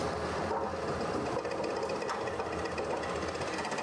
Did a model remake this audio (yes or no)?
no